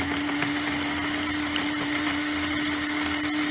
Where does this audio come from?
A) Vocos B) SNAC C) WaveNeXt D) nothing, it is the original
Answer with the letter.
D